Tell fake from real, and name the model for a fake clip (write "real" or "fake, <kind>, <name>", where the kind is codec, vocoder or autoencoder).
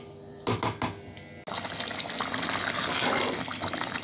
real